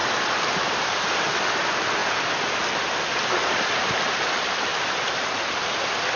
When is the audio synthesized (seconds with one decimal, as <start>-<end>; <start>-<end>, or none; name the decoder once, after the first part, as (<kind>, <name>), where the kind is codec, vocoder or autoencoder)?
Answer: 0.0-0.7 (vocoder, BigVGAN v2); 2.0-3.9; 4.7-5.7